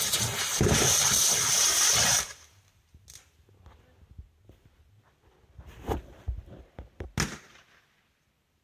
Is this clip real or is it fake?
real